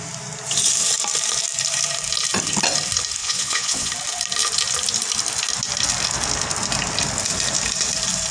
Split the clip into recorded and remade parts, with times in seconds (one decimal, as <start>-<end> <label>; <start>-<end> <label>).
0.0-3.2 recorded; 3.2-3.9 remade; 3.9-8.3 recorded